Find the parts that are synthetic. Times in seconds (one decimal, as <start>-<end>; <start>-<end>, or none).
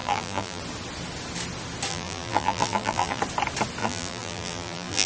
0.0-0.6; 1.9-3.2; 3.8-5.1